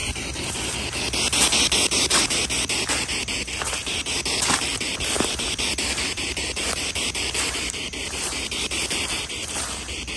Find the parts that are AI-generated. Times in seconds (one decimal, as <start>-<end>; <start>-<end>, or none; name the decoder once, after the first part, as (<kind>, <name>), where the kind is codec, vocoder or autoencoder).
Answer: 4.5-10.2 (vocoder, BigVGAN v2)